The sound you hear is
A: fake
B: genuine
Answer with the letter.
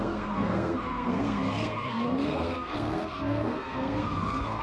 A